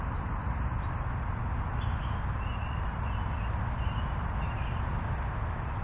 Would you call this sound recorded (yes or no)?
yes